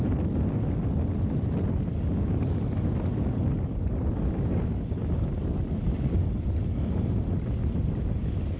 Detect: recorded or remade recorded